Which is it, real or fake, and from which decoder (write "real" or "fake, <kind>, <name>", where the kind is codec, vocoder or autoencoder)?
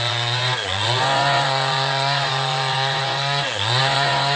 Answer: fake, vocoder, Vocos